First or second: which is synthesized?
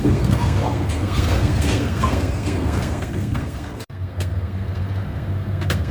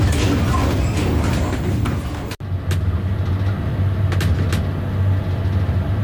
first